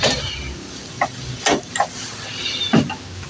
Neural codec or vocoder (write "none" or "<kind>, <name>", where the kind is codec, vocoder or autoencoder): none